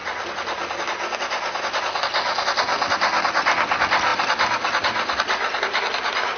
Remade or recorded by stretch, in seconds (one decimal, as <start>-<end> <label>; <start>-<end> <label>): 0.0-6.4 recorded